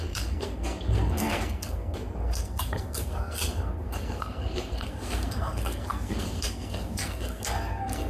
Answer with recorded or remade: remade